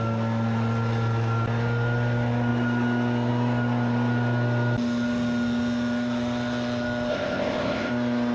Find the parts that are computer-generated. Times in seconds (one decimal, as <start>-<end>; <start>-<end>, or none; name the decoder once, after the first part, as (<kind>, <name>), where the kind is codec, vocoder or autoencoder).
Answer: 7.1-7.9 (codec, ZipCodec)

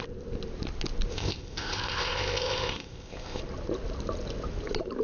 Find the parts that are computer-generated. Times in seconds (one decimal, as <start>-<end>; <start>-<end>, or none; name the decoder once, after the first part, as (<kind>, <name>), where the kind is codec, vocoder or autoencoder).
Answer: 1.1-3.4 (codec, ZipCodec)

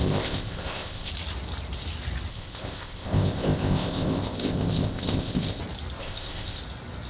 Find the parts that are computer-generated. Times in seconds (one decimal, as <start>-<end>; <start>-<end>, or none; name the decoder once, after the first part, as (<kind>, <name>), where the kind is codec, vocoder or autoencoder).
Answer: 0.0-1.1 (codec, ZipCodec); 2.3-5.6; 6.0-6.6